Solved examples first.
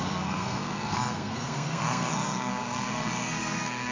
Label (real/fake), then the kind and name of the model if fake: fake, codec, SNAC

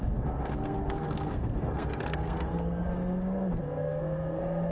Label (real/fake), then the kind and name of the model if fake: fake, codec, SNAC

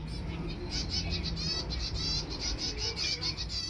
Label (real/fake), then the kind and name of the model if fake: real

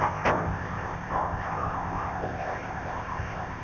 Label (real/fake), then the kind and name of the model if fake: fake, codec, ZipCodec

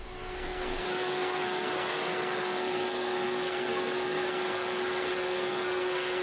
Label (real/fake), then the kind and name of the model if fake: fake, codec, SNAC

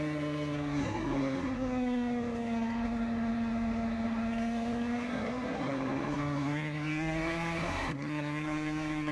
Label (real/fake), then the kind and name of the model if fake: fake, codec, SNAC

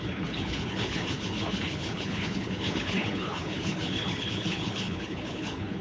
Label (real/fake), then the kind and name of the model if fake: fake, codec, HILCodec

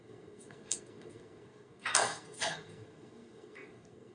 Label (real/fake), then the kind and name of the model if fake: fake, codec, SNAC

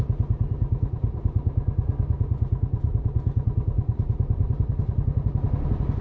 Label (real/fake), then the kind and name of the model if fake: real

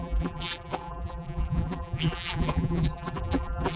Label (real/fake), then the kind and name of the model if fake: fake, vocoder, BigVGAN v2